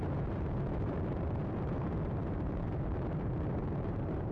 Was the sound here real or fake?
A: fake